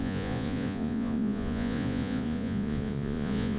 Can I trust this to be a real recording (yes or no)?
no